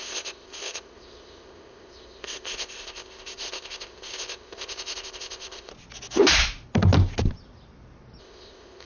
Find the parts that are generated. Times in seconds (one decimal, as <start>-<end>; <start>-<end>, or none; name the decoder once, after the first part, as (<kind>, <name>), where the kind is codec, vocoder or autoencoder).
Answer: 0.0-5.7 (codec, ZipCodec); 8.2-8.9